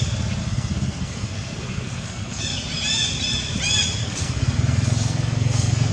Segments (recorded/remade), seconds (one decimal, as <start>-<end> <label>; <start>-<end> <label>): 0.0-0.4 recorded; 0.4-2.4 remade; 2.4-4.0 recorded; 4.0-5.9 remade